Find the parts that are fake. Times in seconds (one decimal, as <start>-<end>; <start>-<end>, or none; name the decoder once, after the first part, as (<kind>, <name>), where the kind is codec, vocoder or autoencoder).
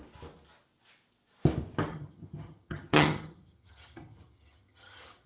1.9-5.3 (vocoder, HiFi-GAN)